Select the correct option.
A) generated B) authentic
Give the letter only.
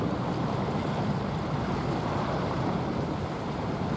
B